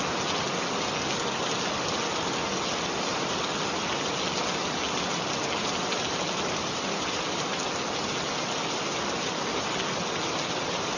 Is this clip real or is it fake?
real